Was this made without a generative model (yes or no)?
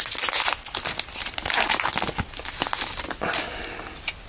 yes